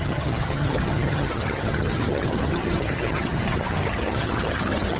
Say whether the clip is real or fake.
fake